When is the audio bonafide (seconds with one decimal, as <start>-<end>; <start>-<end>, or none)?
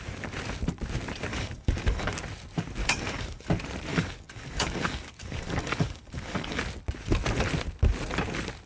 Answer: 0.0-1.3; 2.1-2.8; 3.5-3.9; 6.6-8.7